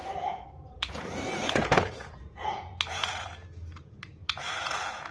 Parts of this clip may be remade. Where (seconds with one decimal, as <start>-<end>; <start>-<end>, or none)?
0.0-5.1